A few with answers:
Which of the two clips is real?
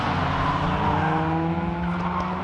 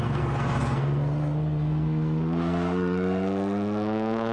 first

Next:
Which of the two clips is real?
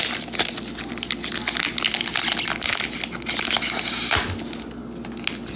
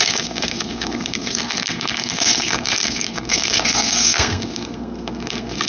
first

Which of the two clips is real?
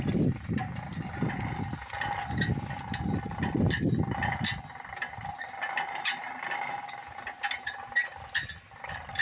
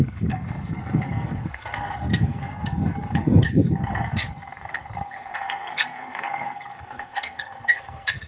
first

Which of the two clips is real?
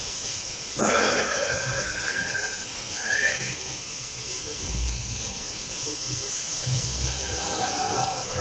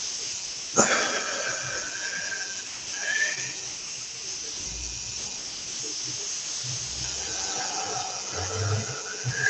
second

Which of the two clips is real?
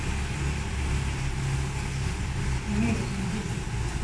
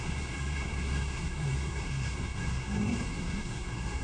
first